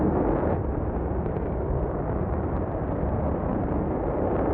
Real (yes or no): yes